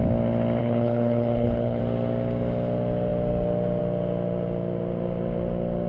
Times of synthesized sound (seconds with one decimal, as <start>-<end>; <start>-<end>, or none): 0.6-1.8